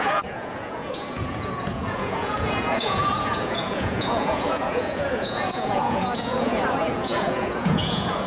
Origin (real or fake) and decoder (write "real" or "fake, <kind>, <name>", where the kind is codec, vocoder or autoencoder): fake, vocoder, Vocos